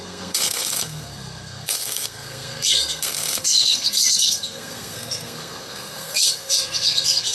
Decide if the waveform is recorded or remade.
remade